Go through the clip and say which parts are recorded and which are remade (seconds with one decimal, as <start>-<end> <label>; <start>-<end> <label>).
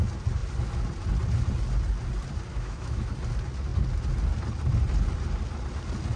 0.0-2.5 recorded; 2.5-3.1 remade; 3.1-6.2 recorded